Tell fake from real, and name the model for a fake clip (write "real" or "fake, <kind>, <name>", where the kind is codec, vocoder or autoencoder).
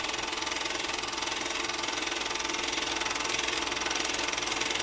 real